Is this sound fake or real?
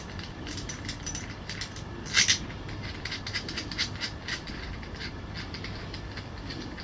real